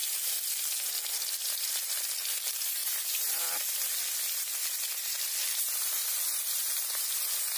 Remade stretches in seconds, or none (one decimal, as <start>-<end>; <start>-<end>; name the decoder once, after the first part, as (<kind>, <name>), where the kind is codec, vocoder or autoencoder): none